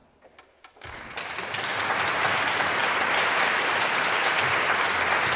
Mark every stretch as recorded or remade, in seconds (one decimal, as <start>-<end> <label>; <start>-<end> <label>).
0.0-5.4 recorded